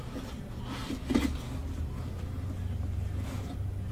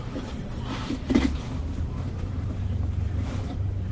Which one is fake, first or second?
second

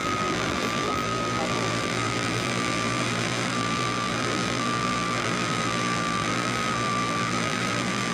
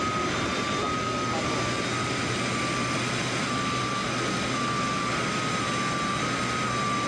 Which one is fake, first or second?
first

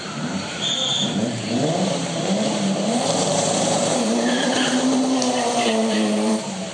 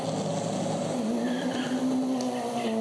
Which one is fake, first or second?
first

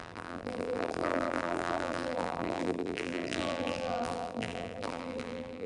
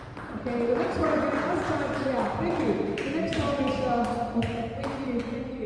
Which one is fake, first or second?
first